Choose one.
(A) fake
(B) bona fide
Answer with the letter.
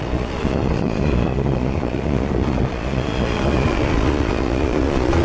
A